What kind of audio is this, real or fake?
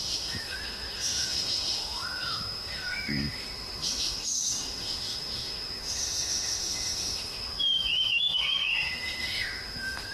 fake